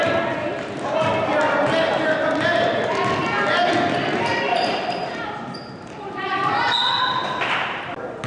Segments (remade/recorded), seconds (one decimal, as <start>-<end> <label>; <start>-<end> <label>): 0.0-4.3 recorded; 4.3-7.9 remade; 7.9-8.3 recorded